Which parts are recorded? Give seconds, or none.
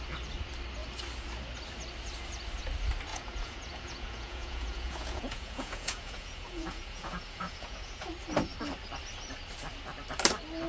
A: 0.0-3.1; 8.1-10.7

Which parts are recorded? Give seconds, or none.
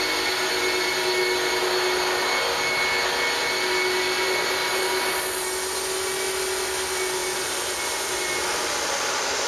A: 0.0-9.5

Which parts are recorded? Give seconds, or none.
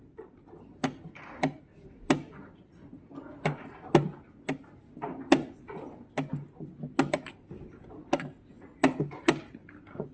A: 0.0-10.1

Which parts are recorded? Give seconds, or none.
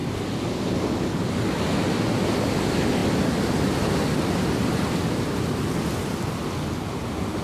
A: 0.0-7.4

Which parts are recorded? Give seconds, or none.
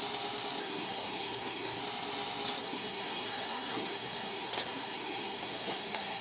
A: 0.0-0.6; 1.8-2.6